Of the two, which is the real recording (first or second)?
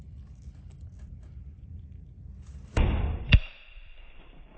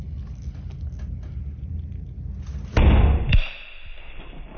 second